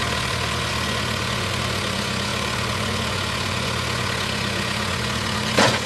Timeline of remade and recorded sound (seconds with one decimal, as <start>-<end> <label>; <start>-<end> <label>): 0.0-5.9 remade